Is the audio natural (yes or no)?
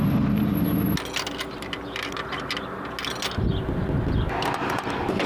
yes